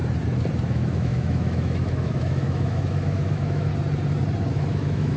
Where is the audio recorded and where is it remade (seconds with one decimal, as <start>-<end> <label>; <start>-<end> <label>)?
0.0-0.6 recorded; 0.6-3.7 remade; 3.7-4.5 recorded; 4.5-5.2 remade